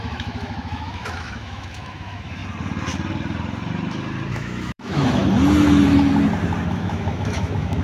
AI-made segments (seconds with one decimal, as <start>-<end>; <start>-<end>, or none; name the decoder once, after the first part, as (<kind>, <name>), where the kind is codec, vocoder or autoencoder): 0.0-2.4 (autoencoder, DAC-VAE); 4.3-5.2; 6.7-7.8